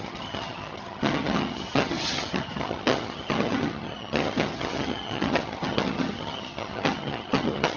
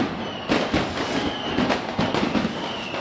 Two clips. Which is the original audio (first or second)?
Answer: second